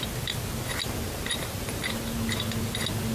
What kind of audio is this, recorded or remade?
recorded